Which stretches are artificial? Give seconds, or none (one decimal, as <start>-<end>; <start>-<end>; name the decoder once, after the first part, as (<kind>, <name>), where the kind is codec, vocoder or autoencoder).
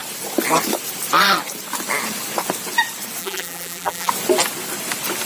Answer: 3.2-4.1 (vocoder, BigVGAN v2)